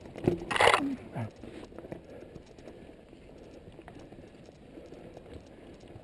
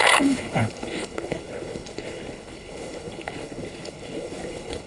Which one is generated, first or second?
second